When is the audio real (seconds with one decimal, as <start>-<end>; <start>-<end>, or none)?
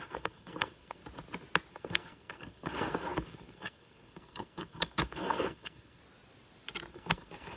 1.0-1.7; 6.0-6.9